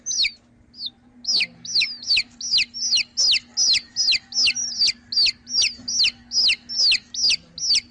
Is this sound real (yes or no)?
yes